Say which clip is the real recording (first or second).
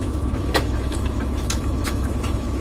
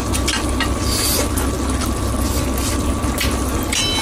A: second